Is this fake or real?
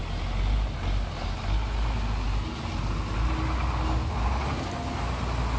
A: real